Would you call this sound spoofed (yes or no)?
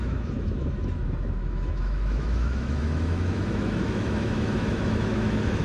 yes